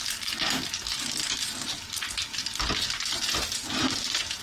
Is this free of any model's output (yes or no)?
yes